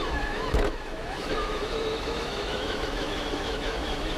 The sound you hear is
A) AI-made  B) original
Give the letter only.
A